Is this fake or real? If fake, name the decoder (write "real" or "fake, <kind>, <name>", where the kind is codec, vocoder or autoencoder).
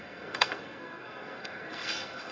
fake, codec, SNAC